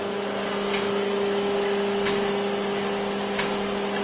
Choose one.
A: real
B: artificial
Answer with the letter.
A